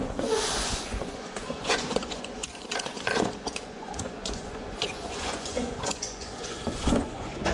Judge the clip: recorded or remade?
remade